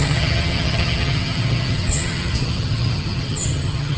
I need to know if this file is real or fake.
fake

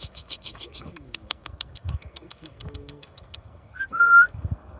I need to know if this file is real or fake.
fake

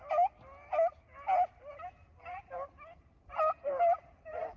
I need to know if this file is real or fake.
real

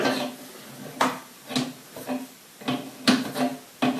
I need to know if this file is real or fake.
real